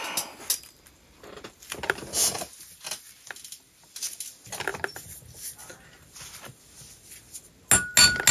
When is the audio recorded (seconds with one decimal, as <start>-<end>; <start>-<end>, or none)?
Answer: 0.0-8.3